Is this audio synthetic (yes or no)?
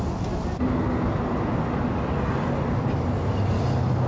no